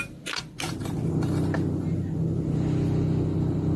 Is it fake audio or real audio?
real